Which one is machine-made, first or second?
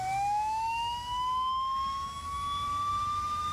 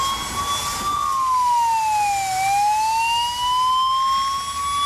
first